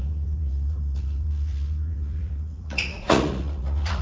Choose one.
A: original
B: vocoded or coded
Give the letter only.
B